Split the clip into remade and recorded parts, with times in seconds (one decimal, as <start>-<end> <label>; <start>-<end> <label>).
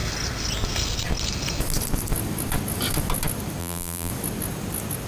0.0-3.6 recorded; 3.6-4.1 remade; 4.1-5.1 recorded